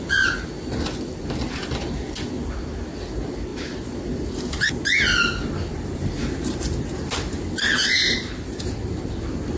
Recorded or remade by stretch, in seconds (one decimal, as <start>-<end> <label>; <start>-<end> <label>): 0.0-5.7 recorded; 5.7-6.6 remade; 6.6-8.0 recorded; 8.0-9.1 remade; 9.1-9.6 recorded